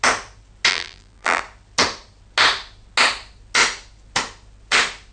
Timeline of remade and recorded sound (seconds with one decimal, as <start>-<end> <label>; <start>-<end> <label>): 0.0-0.7 recorded; 0.7-1.4 remade; 1.4-5.1 recorded